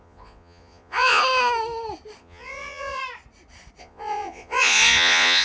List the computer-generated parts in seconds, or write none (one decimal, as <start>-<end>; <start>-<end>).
0.0-1.2; 2.2-3.0; 3.8-5.4